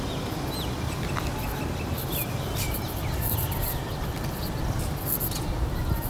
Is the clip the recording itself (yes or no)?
yes